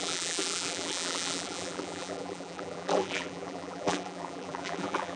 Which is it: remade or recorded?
remade